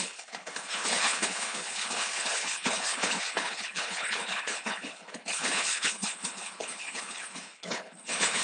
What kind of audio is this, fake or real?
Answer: fake